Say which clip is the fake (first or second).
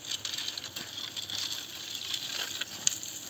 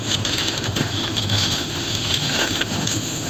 second